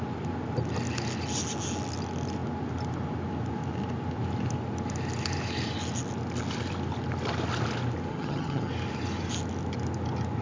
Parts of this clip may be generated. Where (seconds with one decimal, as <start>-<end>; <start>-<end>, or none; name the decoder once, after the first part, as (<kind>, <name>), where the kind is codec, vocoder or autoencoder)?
8.1-8.7 (vocoder, HiFi-GAN)